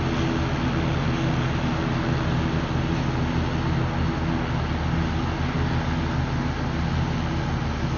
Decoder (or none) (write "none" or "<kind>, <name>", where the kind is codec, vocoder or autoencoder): none